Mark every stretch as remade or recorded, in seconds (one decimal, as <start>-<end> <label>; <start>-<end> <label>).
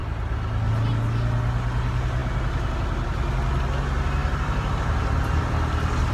0.0-6.1 recorded